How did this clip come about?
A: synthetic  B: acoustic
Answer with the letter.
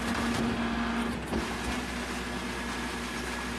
B